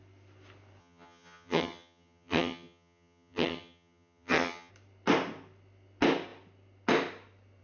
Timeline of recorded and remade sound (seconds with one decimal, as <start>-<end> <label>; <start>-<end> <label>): 0.0-0.8 recorded; 0.8-4.7 remade; 4.7-7.6 recorded

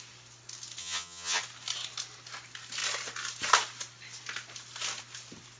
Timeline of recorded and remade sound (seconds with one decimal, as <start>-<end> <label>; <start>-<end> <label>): 0.0-0.8 recorded; 0.8-1.4 remade; 1.4-5.6 recorded

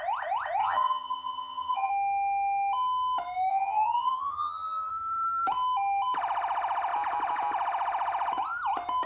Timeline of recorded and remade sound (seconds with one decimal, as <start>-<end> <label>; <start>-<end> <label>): 0.0-0.6 recorded; 0.6-1.9 remade; 1.9-3.5 recorded; 3.5-4.9 remade; 4.9-9.1 recorded

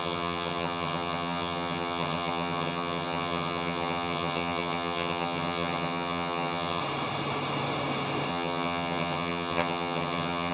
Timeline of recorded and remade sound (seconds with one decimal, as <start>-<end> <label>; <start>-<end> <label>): 0.0-6.8 remade; 6.8-8.3 recorded; 8.3-10.5 remade

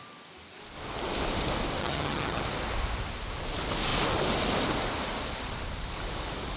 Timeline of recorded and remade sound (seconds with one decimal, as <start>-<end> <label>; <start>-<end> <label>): 0.0-1.8 recorded; 1.8-2.4 remade; 2.4-6.6 recorded

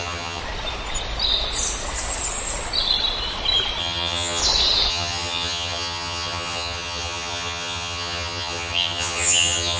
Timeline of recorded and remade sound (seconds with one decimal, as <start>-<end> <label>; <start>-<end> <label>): 0.0-0.4 remade; 0.4-3.8 recorded; 3.8-4.4 remade; 4.4-4.9 recorded; 4.9-9.8 remade

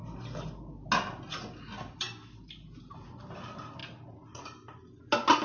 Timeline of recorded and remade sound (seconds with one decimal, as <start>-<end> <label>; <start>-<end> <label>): 0.0-5.4 recorded

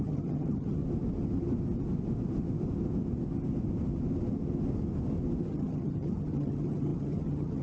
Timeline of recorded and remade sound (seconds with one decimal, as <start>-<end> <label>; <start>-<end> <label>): 0.0-0.8 remade; 0.8-5.4 recorded; 5.4-7.6 remade